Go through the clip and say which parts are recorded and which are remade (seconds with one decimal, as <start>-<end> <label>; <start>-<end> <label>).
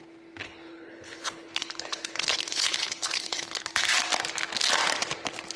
0.0-0.4 recorded; 0.4-3.7 remade; 3.7-5.6 recorded